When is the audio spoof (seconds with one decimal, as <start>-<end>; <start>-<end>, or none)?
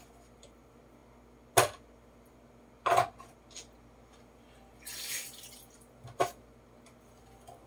none